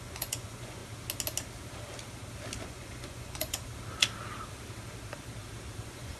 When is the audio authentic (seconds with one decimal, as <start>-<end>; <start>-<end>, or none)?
0.8-2.6; 3.7-5.8